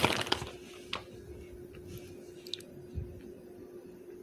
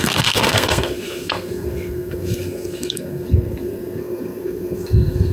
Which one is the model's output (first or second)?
second